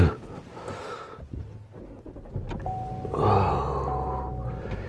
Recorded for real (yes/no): yes